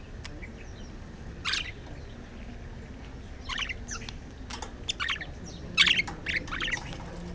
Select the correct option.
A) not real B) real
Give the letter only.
B